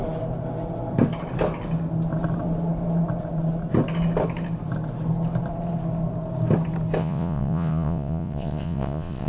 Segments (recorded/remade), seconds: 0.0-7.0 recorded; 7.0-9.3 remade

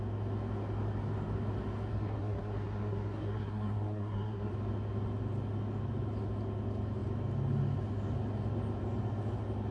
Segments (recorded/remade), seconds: 0.0-1.9 recorded; 1.9-4.5 remade; 4.5-9.7 recorded

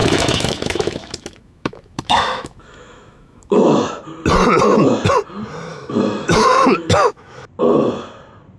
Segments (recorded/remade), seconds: 0.0-3.9 remade; 3.9-5.7 recorded; 5.7-7.5 remade; 7.5-8.6 recorded

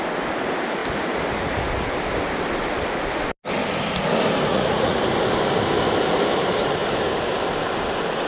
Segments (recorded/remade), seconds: 0.0-4.5 recorded; 4.5-5.0 remade; 5.0-8.3 recorded

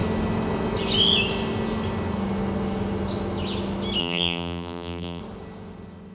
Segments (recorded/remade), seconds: 0.0-4.0 recorded; 4.0-5.2 remade; 5.2-6.1 recorded